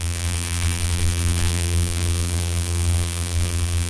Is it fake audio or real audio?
fake